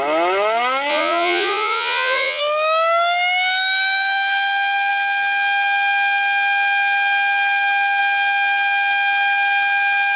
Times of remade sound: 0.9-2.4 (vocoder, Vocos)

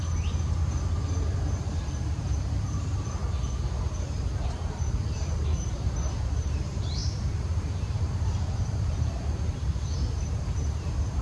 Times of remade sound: 1.7-11.2 (vocoder, BigVGAN v2)